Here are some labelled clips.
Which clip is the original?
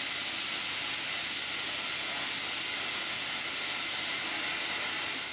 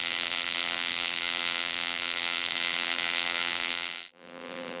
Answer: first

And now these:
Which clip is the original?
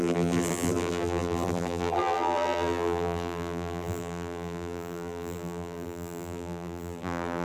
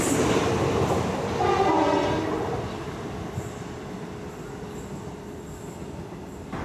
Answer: second